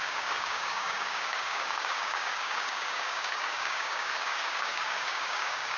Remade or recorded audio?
remade